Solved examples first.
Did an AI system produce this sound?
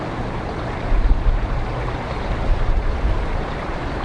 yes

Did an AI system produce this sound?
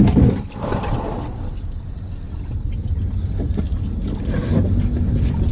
no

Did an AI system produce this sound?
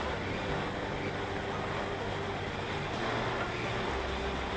no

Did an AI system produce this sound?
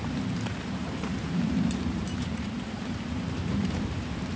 yes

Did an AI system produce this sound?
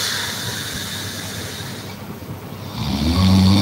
no